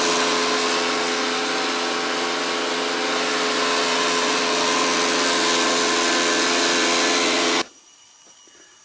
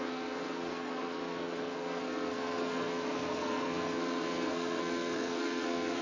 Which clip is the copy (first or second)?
second